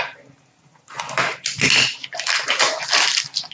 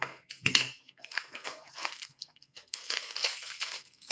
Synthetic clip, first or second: second